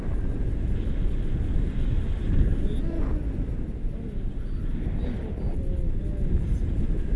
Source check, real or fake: real